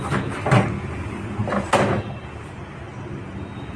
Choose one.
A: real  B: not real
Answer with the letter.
A